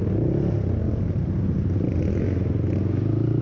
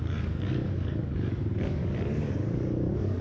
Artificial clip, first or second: second